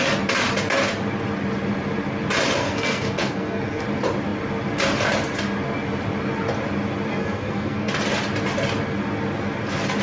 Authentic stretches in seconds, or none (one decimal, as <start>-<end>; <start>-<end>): 0.0-2.6; 3.8-7.1; 7.9-10.0

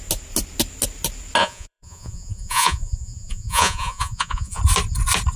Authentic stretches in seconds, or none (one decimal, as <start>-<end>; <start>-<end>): 0.0-1.4; 4.6-5.4

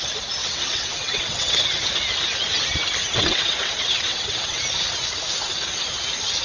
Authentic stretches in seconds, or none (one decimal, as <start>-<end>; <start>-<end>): 0.0-0.4; 1.6-3.0; 4.6-6.4

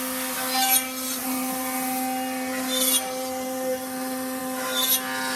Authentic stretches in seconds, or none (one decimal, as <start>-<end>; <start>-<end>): 0.0-1.2; 4.4-5.4

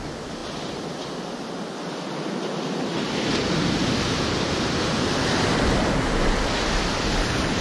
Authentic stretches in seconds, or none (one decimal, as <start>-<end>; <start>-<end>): 0.0-7.6

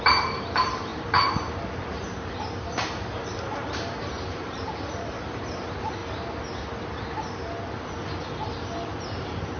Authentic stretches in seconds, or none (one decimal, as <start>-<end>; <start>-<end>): 6.0-9.0

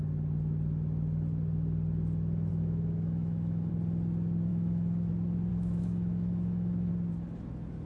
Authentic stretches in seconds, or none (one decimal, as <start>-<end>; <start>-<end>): 0.0-2.5; 3.7-4.5; 5.1-5.5; 6.9-7.9

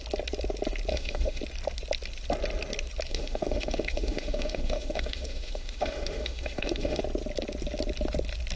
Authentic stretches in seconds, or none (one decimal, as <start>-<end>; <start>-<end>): 0.0-0.9; 1.4-3.1; 7.0-8.6